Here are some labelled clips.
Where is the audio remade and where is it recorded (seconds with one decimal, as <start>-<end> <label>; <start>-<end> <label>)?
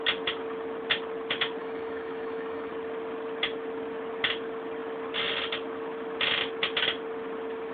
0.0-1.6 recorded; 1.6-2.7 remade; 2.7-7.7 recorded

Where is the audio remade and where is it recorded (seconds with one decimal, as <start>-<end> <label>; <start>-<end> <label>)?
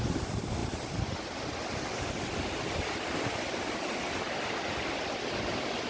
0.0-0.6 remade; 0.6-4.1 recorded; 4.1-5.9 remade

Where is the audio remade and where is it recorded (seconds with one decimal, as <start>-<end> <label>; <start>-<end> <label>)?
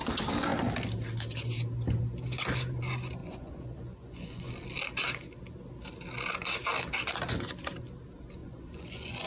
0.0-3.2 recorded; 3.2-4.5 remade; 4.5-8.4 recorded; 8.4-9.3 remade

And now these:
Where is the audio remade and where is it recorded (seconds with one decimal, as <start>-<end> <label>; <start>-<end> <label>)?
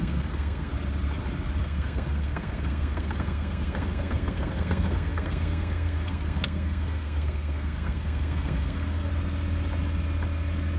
0.0-0.7 remade; 0.7-1.6 recorded; 1.6-9.1 remade; 9.1-10.8 recorded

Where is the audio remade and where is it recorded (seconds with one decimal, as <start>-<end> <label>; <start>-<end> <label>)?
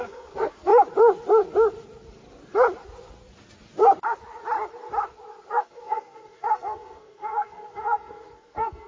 0.0-0.7 remade; 0.7-5.5 recorded; 5.5-8.9 remade